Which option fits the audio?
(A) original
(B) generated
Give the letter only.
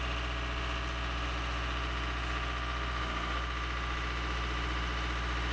A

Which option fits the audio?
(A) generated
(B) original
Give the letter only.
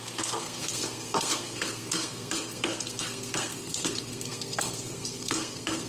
A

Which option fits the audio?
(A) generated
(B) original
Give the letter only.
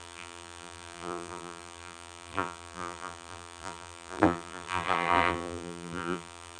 A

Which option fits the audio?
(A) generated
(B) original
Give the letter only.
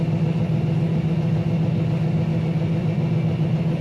B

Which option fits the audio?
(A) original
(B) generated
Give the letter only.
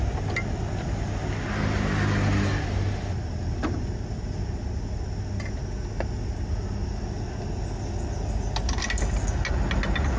A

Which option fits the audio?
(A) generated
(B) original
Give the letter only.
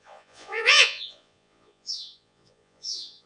A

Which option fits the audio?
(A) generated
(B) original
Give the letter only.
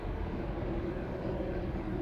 A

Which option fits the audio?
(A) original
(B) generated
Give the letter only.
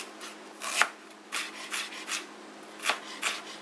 A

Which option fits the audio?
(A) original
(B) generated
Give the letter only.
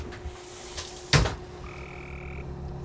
A